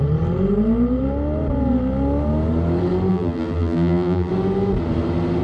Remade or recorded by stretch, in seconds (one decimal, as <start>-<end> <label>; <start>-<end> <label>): 0.0-3.1 recorded; 3.1-4.3 remade; 4.3-5.4 recorded